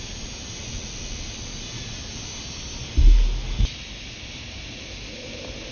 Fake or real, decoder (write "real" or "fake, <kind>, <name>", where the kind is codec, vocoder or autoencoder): real